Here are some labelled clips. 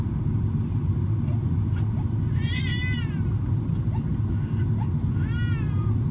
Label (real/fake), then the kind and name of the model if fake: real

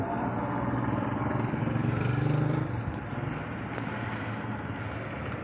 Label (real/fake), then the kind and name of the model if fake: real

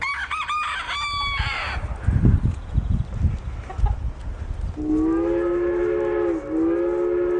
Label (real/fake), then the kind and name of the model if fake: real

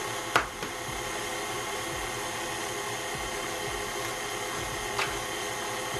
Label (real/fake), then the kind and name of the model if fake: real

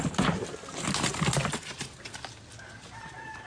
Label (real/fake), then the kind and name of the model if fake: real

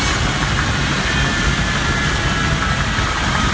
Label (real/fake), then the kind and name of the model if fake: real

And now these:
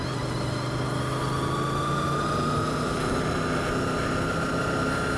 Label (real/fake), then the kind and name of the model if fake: real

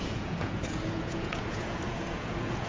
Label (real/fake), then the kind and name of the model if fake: fake, vocoder, Vocos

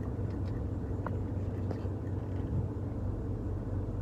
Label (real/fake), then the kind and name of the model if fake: real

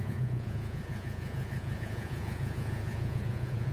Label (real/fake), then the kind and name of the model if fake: fake, vocoder, Vocos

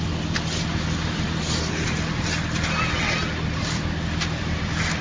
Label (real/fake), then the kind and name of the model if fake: real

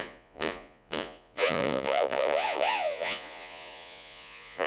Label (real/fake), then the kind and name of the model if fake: fake, vocoder, Vocos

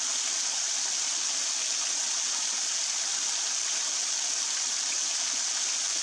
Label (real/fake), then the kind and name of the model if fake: real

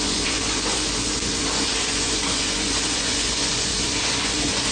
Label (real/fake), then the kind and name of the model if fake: fake, vocoder, Vocos